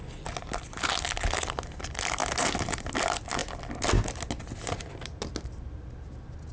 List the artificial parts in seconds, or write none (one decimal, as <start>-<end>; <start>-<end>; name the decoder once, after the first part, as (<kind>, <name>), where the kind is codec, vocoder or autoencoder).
none